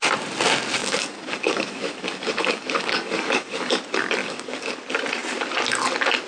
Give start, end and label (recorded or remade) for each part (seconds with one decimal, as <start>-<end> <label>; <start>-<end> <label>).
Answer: 0.0-0.8 recorded; 0.8-3.7 remade; 3.7-4.2 recorded; 4.2-4.7 remade; 4.7-6.3 recorded